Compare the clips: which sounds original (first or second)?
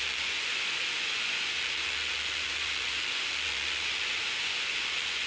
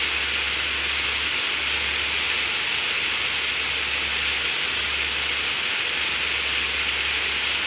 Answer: second